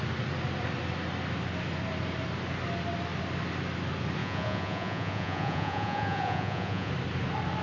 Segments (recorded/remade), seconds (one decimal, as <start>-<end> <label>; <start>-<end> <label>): 0.0-4.2 recorded; 4.2-6.9 remade; 6.9-7.6 recorded